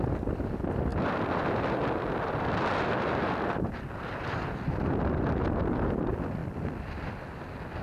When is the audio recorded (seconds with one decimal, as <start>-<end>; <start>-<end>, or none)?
0.0-7.8